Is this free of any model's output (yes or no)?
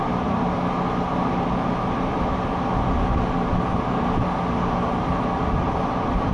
yes